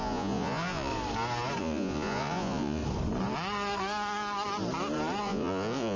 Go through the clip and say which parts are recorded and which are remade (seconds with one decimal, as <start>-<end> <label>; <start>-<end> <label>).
0.0-0.9 remade; 0.9-1.6 recorded; 1.6-2.8 remade; 2.8-5.2 recorded; 5.2-6.0 remade